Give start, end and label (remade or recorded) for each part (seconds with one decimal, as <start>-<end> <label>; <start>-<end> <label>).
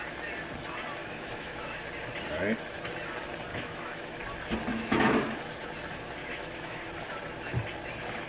0.0-1.0 recorded; 1.0-1.8 remade; 1.8-3.5 recorded; 3.5-4.2 remade; 4.2-4.7 recorded; 4.7-5.2 remade; 5.2-6.2 recorded; 6.2-6.8 remade; 6.8-8.3 recorded